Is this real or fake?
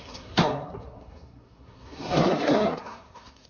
fake